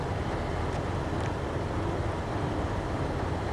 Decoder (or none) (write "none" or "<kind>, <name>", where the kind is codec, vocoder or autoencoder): none